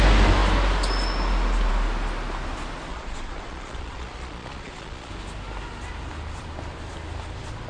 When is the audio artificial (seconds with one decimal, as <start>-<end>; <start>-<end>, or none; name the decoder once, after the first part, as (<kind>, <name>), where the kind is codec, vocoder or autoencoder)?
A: 2.9-5.1 (vocoder, Vocos)

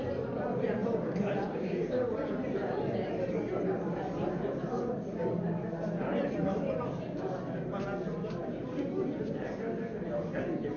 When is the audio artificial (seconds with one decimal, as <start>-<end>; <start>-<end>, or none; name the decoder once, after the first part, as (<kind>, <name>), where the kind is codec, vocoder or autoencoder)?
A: none

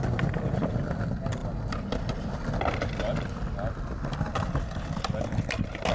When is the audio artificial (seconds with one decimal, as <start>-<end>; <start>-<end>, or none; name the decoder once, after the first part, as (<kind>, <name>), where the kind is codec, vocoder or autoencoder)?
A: none